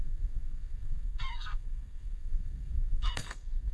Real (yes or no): no